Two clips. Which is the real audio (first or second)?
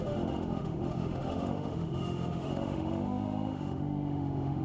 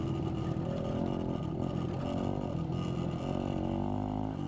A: second